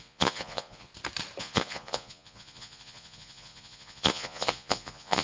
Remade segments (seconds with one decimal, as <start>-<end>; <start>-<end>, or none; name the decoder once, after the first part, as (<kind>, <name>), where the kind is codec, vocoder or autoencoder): 0.0-0.9 (vocoder, Vocos); 1.4-5.2